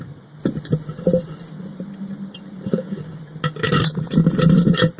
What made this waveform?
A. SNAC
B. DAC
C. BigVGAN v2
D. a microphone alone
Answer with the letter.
D